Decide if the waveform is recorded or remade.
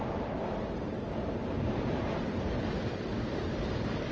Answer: recorded